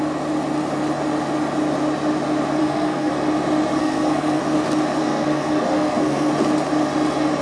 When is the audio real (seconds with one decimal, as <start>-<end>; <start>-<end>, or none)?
0.0-2.6; 3.1-3.8; 4.4-5.0; 6.3-7.4